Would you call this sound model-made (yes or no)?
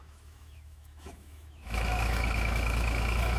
yes